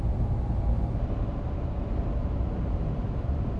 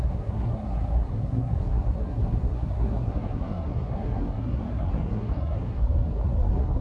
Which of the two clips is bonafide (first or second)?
first